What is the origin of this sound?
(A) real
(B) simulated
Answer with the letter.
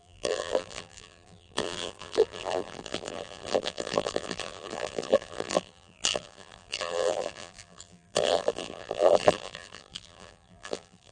B